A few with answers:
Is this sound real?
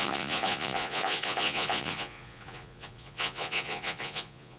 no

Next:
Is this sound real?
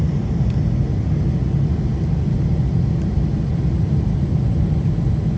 yes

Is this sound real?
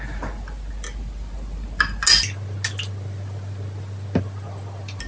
yes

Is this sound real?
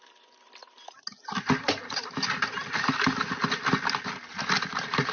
yes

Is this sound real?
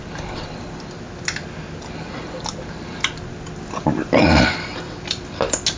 yes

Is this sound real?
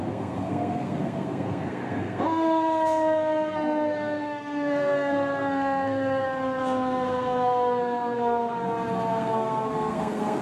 no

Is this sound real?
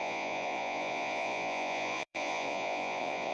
no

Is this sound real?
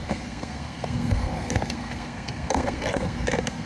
no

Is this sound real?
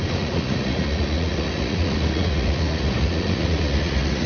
no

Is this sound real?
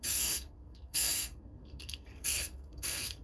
no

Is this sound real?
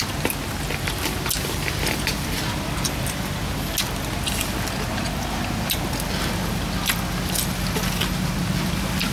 yes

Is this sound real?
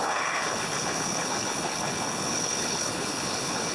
no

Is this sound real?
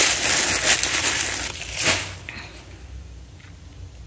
yes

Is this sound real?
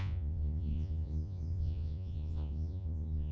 no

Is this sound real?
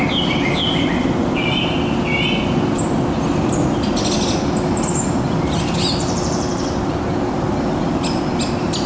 yes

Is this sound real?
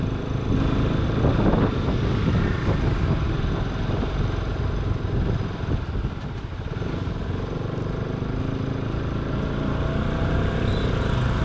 yes